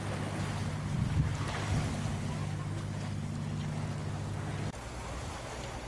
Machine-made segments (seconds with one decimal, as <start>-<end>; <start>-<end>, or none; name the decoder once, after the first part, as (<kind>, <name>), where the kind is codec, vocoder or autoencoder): none